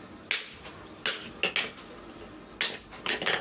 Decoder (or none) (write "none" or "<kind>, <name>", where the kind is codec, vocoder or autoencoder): none